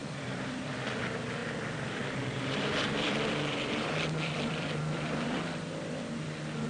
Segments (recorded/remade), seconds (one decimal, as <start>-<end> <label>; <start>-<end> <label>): 0.0-0.7 remade; 0.7-1.4 recorded; 1.4-5.4 remade; 5.4-6.7 recorded